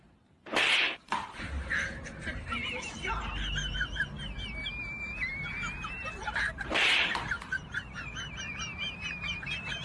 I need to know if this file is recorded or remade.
remade